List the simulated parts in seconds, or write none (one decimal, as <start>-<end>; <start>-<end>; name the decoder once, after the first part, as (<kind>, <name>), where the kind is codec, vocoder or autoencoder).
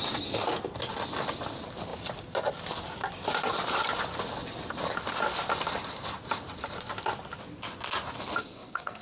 8.4-9.0 (codec, SNAC)